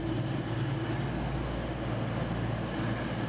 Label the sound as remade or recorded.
recorded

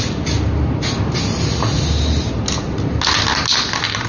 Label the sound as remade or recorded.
recorded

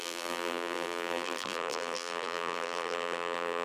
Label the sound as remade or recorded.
remade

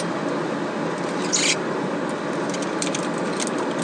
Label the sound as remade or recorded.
recorded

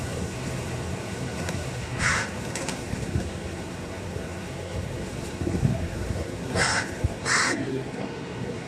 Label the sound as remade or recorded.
remade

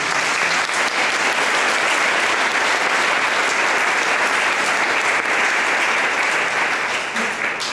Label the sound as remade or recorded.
recorded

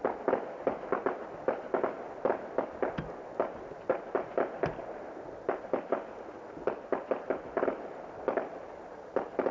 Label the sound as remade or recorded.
recorded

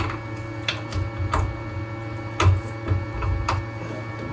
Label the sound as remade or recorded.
recorded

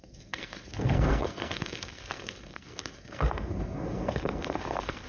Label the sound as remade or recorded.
remade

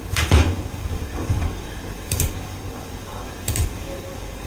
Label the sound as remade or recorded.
remade